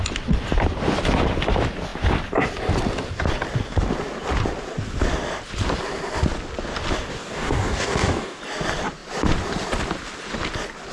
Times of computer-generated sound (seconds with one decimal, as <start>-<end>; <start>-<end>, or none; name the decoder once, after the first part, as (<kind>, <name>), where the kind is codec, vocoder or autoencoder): 7.1-8.4 (codec, DAC)